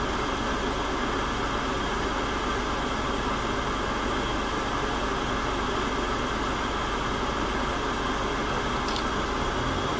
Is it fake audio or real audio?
real